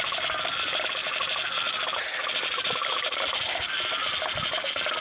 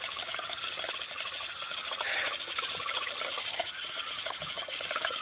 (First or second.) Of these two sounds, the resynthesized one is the second